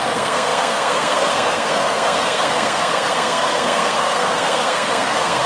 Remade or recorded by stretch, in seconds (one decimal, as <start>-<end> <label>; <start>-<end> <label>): 0.0-5.5 remade